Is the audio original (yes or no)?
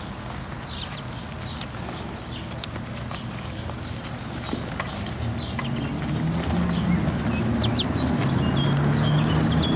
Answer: yes